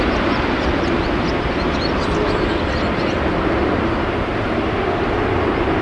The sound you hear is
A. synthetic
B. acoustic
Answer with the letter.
B